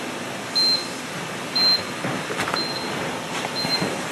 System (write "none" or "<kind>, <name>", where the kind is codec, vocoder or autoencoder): none